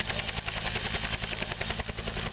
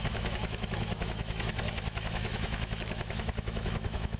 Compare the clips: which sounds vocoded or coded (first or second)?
second